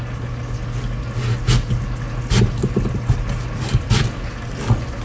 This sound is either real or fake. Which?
real